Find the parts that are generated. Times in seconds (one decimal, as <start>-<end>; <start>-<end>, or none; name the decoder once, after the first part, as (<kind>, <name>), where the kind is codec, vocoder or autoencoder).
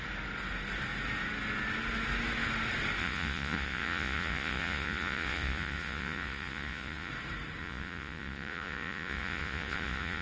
3.0-7.1 (vocoder, Vocos); 7.6-10.2